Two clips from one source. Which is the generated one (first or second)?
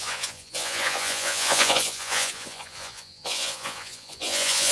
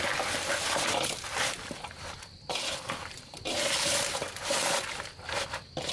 first